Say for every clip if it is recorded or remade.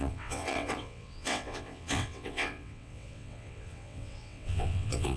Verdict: remade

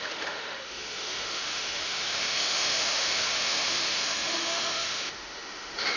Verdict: remade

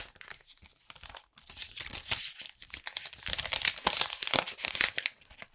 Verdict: remade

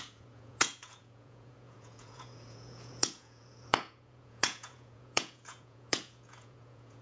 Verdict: remade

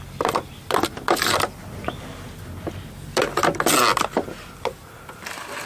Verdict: recorded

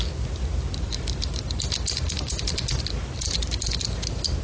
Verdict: recorded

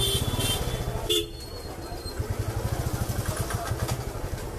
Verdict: recorded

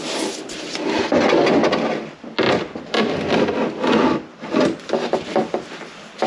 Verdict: recorded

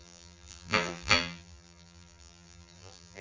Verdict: remade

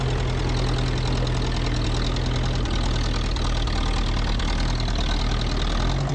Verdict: recorded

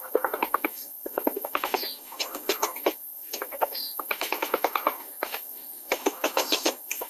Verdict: remade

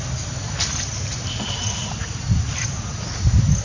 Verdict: recorded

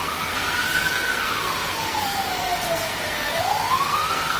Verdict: remade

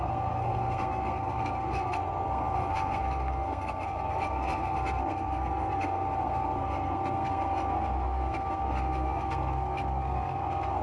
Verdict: remade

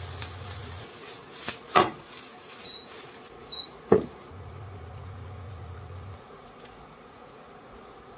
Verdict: remade